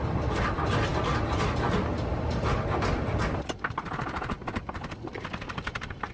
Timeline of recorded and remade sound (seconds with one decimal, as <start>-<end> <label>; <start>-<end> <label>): 0.0-6.1 recorded